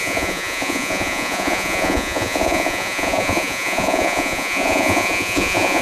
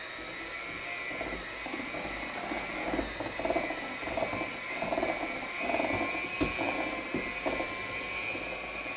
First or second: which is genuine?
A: second